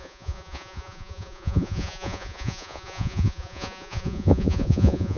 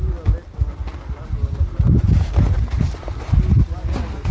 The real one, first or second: second